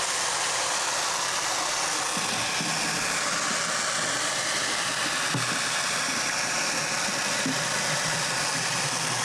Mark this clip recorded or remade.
recorded